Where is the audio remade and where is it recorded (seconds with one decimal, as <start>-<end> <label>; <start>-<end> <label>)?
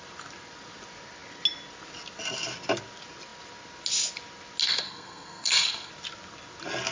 0.0-4.6 recorded; 4.6-5.9 remade; 5.9-6.9 recorded